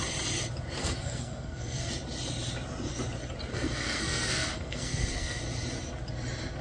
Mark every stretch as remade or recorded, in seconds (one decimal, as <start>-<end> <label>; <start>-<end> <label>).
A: 0.0-0.8 recorded; 0.8-1.9 remade; 1.9-3.5 recorded; 3.5-5.4 remade; 5.4-6.6 recorded

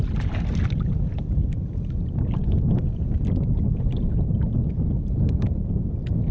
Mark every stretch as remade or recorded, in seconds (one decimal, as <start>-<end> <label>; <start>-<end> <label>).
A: 0.0-6.3 recorded